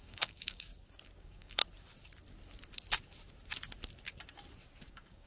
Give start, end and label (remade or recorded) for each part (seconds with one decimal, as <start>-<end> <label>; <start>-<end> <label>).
0.0-0.7 remade; 0.7-1.2 recorded; 1.2-1.6 remade; 1.6-4.8 recorded; 4.8-5.3 remade